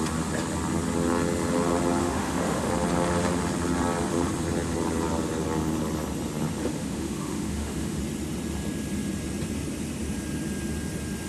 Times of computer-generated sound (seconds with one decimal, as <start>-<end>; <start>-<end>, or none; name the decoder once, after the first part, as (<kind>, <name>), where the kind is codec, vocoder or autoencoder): 2.0-2.7 (autoencoder, DAC-VAE); 6.6-8.0